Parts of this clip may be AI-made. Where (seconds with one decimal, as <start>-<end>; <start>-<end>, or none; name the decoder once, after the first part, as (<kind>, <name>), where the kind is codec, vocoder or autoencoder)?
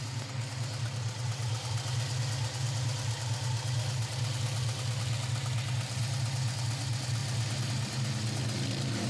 none